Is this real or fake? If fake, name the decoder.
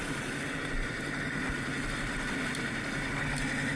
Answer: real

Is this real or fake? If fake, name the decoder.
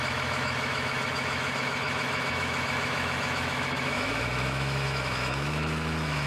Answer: fake, autoencoder, DAC-VAE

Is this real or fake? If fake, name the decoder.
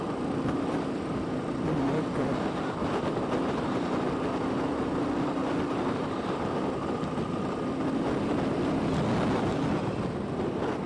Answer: real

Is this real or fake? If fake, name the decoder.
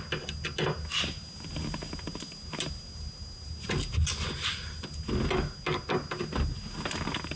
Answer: real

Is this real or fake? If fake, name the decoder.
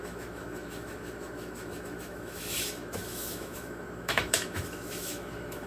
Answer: fake, autoencoder, DAC-VAE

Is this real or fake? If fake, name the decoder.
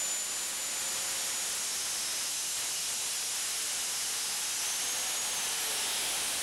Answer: real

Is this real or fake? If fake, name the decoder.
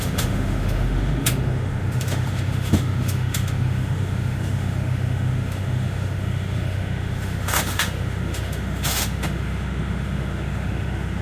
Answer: fake, autoencoder, DAC-VAE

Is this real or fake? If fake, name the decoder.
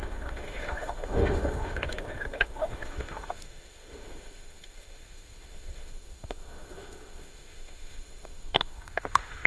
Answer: fake, autoencoder, DAC-VAE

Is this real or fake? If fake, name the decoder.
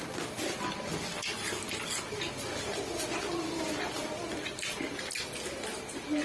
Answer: real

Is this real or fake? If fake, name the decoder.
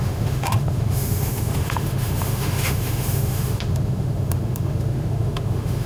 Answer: fake, autoencoder, DAC-VAE